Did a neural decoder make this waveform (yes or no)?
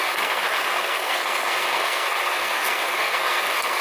yes